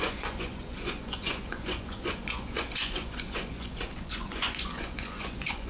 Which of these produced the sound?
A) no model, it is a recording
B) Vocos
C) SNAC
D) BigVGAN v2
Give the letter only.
B